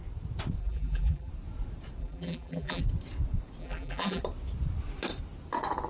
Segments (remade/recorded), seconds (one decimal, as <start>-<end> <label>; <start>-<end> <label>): 0.0-0.6 recorded; 0.6-1.3 remade; 1.3-2.0 recorded; 2.0-2.8 remade; 2.8-3.6 recorded; 3.6-4.2 remade; 4.2-5.9 recorded